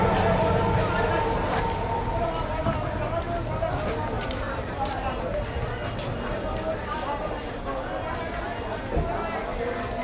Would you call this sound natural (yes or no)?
yes